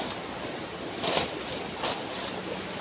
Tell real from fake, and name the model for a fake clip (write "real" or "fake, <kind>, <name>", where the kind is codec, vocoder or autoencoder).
real